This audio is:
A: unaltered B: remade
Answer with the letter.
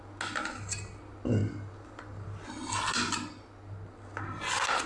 A